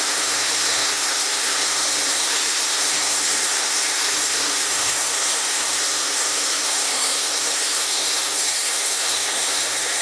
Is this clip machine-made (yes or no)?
yes